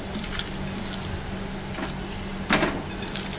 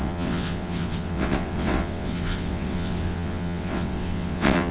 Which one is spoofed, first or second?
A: second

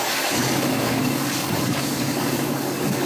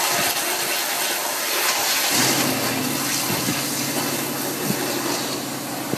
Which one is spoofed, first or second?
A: first